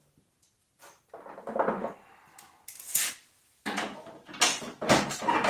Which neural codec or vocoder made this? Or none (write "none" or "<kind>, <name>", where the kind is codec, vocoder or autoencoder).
none